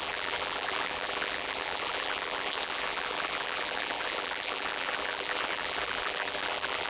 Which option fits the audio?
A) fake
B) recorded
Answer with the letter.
A